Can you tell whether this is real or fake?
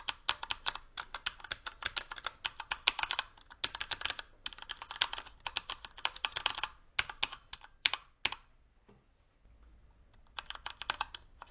real